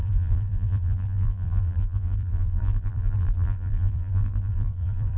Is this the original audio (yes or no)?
no